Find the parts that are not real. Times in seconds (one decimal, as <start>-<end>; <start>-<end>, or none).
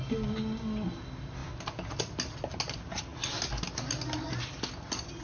none